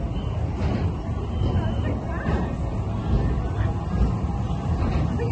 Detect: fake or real real